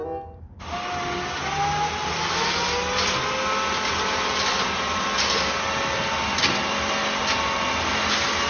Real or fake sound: real